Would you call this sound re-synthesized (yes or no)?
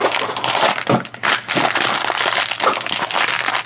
no